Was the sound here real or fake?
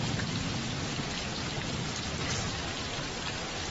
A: real